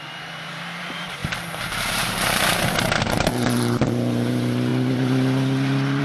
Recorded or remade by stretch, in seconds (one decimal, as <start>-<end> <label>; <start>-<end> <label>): 0.0-1.2 remade; 1.2-1.9 recorded; 1.9-2.5 remade; 2.5-3.2 recorded; 3.2-4.7 remade; 4.7-6.0 recorded